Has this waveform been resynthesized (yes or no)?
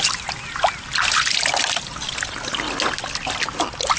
no